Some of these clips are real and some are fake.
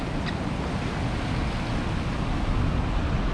real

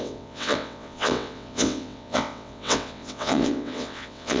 fake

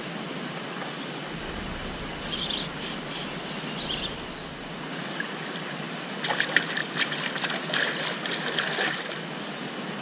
real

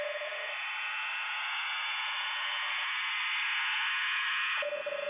real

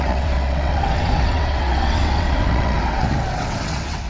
fake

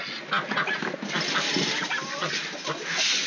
real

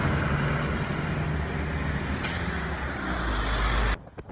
real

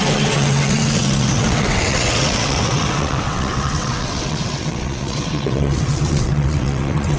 fake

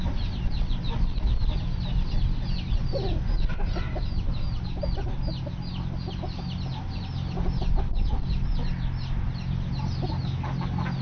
real